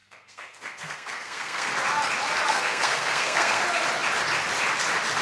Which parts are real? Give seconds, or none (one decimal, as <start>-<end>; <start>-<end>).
1.7-2.5; 3.6-5.2